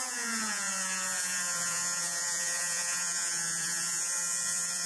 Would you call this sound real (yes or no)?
no